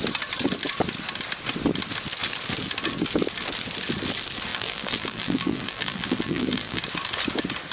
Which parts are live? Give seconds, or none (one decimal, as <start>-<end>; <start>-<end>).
0.0-4.5; 6.8-7.7